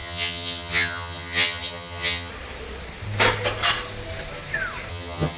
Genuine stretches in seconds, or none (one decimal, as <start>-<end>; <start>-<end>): 2.3-4.9